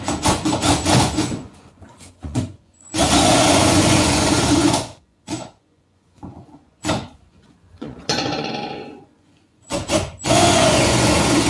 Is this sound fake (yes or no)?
yes